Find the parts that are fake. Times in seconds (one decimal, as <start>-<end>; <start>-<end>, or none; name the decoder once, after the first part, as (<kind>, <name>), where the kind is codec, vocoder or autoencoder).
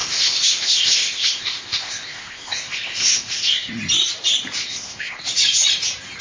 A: 0.0-3.7 (codec, ZipCodec); 4.6-5.2